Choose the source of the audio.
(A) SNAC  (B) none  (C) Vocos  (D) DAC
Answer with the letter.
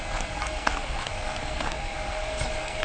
A